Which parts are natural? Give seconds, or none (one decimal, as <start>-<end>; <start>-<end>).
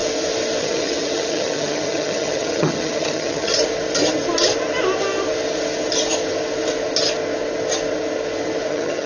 0.0-0.6; 3.5-8.7